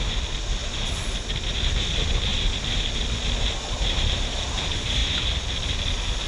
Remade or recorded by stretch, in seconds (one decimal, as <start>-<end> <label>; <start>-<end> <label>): 0.0-6.3 recorded